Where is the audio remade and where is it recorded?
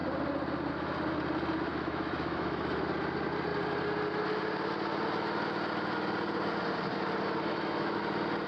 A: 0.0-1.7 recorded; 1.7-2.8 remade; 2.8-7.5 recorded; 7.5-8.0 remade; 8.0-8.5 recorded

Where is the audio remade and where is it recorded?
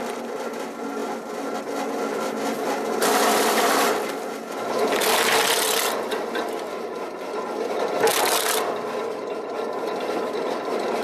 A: 0.0-11.0 recorded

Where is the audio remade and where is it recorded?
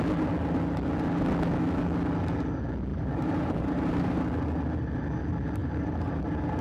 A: 0.0-2.9 recorded; 2.9-4.2 remade; 4.2-5.6 recorded; 5.6-6.6 remade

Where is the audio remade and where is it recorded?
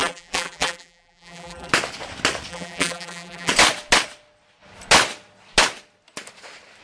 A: 0.0-1.7 remade; 1.7-2.5 recorded; 2.5-3.5 remade; 3.5-6.8 recorded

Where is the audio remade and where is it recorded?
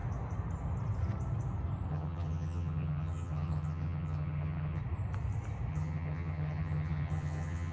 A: 0.0-1.9 recorded; 1.9-4.8 remade; 4.8-5.7 recorded; 5.7-7.7 remade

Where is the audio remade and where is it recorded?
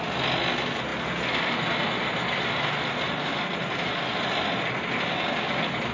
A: 0.0-5.9 recorded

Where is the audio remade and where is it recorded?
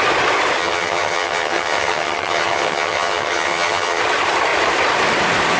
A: 0.0-0.6 recorded; 0.6-4.0 remade; 4.0-5.6 recorded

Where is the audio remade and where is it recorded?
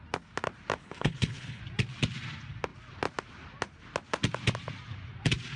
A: 0.0-0.8 recorded; 0.8-1.6 remade; 1.6-5.6 recorded